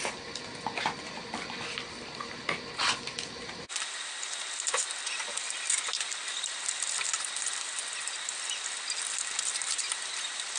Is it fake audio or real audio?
real